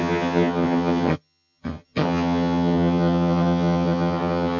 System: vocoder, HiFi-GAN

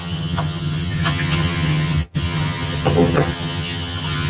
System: vocoder, HiFi-GAN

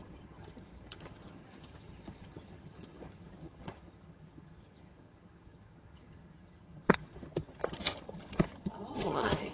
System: vocoder, HiFi-GAN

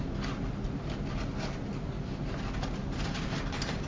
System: none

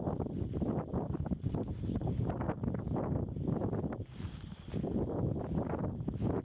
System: none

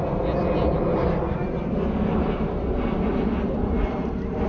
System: none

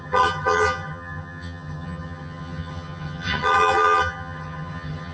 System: vocoder, HiFi-GAN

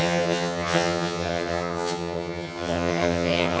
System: vocoder, HiFi-GAN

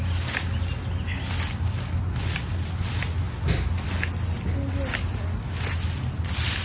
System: none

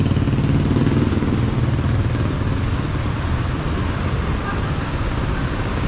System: none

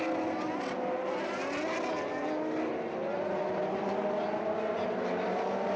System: none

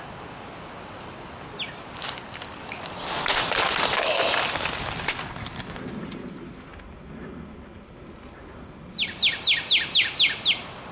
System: none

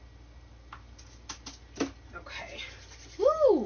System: none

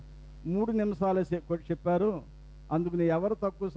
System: none